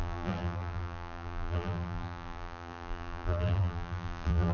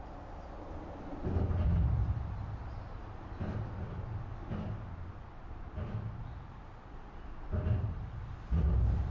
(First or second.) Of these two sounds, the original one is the second